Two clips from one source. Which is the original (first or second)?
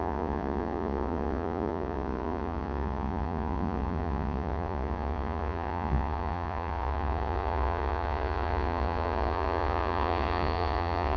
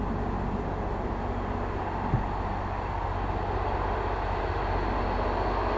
second